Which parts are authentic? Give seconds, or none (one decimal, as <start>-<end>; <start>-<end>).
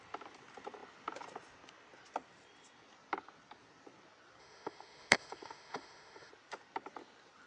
0.0-4.4; 6.3-7.5